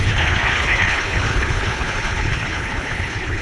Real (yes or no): no